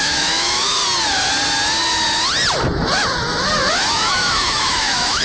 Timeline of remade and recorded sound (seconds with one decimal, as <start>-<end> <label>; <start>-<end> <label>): 0.0-0.8 remade; 0.8-3.9 recorded; 3.9-5.2 remade